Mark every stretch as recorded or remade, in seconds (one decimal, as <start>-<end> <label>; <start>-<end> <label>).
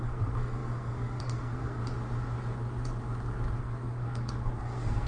0.0-1.8 remade; 1.8-3.6 recorded; 3.6-5.1 remade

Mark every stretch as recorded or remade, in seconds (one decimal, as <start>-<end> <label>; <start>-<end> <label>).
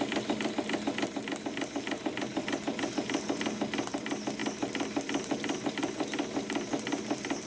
0.0-7.5 recorded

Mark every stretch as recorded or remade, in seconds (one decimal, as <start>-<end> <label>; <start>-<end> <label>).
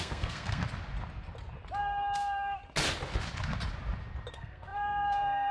0.0-0.6 remade; 0.6-1.8 recorded; 1.8-2.6 remade; 2.6-4.3 recorded; 4.3-5.5 remade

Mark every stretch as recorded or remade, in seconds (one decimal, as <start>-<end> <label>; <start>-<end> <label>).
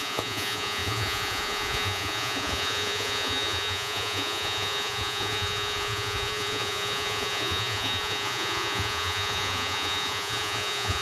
0.0-11.0 remade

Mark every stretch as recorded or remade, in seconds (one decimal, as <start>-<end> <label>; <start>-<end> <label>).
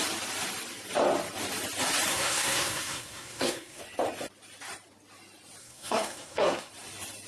0.0-2.1 recorded; 2.1-3.8 remade; 3.8-5.6 recorded; 5.6-6.7 remade; 6.7-7.3 recorded